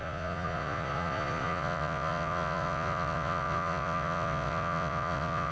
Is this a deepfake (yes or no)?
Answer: yes